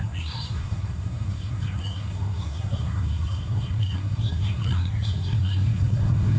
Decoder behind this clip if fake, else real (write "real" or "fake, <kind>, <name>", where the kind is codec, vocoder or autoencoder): fake, codec, SNAC